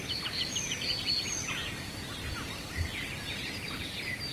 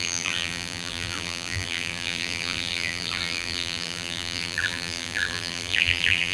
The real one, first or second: first